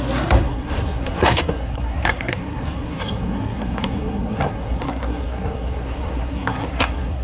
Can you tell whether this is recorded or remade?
remade